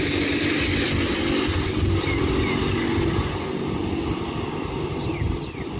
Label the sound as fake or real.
real